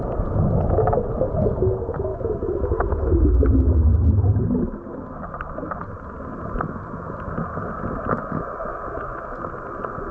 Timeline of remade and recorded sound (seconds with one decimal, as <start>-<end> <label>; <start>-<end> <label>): 0.0-2.1 recorded; 2.1-3.1 remade; 3.1-8.7 recorded; 8.7-9.2 remade; 9.2-10.1 recorded